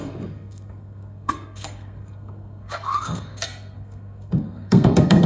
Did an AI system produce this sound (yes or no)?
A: yes